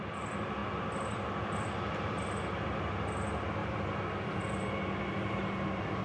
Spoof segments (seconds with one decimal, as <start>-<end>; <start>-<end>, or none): none

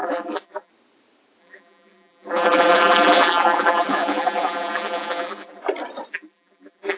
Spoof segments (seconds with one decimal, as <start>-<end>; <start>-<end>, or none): 0.0-0.7; 1.4-5.6; 6.1-7.0

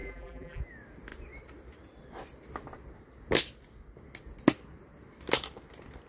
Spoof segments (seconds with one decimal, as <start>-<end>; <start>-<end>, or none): 0.0-0.6